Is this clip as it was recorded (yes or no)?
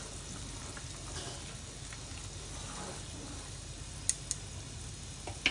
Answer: yes